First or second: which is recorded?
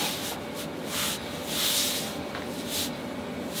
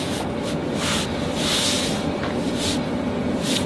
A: first